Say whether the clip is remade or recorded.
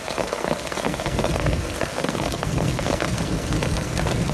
remade